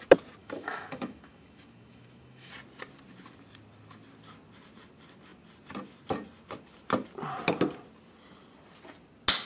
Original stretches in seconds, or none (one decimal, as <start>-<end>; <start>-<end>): 0.0-0.4; 2.5-9.5